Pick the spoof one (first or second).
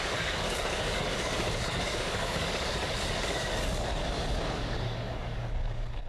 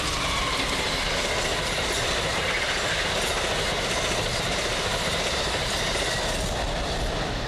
first